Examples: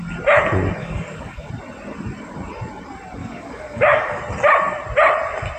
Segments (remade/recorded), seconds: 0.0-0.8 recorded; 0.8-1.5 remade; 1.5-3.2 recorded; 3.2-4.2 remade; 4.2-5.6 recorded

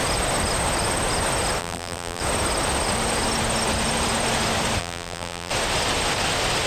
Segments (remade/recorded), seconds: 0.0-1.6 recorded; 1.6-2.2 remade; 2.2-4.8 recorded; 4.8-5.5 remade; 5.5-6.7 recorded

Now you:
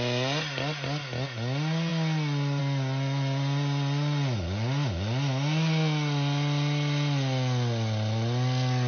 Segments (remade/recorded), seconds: 0.0-8.9 recorded

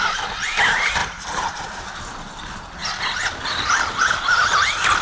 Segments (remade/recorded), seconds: 0.0-1.0 recorded; 1.0-2.0 remade; 2.0-5.0 recorded

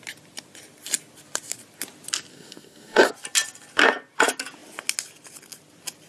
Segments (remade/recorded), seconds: 0.0-2.3 recorded; 2.3-3.1 remade; 3.1-6.1 recorded

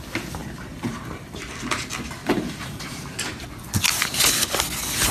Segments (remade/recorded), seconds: 0.0-0.4 recorded; 0.4-1.4 remade; 1.4-2.2 recorded; 2.2-3.1 remade; 3.1-5.1 recorded

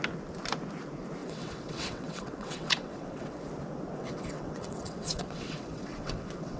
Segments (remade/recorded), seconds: 0.0-1.2 recorded; 1.2-3.4 remade; 3.4-4.0 recorded; 4.0-6.6 remade